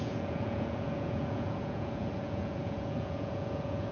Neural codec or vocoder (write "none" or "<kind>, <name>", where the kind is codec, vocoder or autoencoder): vocoder, Vocos